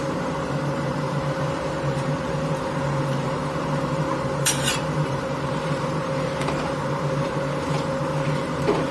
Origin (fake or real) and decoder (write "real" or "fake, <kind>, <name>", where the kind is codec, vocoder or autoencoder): fake, vocoder, BigVGAN v2